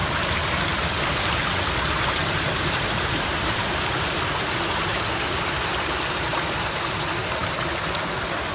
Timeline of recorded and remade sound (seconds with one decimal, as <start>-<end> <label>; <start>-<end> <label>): 0.0-0.6 remade; 0.6-2.2 recorded; 2.2-6.3 remade; 6.3-8.5 recorded